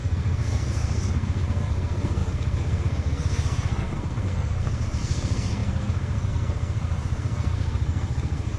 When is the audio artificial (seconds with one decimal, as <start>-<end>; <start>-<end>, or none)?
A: 0.0-8.6